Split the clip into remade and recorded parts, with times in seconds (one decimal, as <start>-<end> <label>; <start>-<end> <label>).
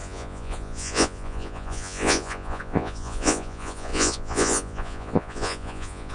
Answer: 0.0-6.1 remade